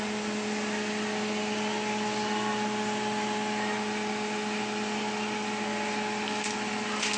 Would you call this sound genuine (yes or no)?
yes